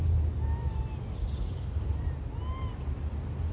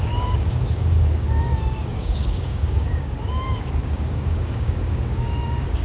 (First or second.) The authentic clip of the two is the first